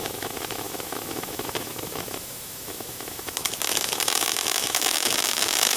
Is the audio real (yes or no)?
no